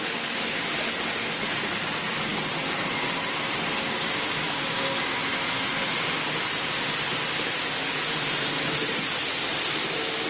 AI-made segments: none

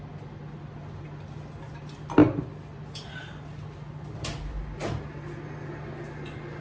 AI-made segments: none

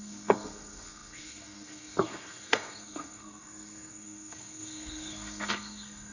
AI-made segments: 0.0-6.1

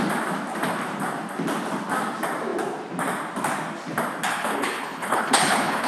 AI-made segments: 4.3-5.9